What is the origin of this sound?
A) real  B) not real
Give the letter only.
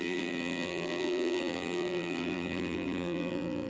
B